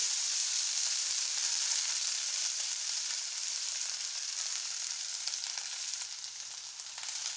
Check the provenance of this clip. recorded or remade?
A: remade